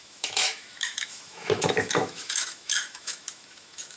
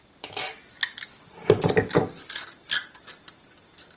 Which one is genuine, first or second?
second